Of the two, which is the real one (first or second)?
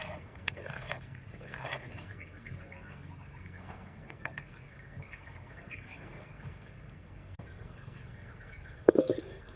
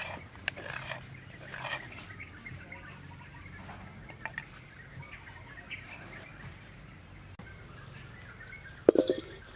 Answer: second